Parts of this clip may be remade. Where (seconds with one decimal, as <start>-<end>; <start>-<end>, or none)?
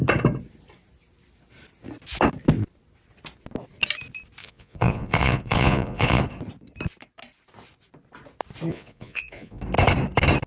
4.4-6.2; 8.7-9.6